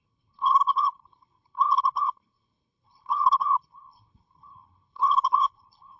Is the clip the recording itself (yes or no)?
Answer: no